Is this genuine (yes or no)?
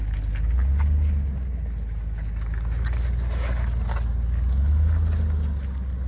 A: yes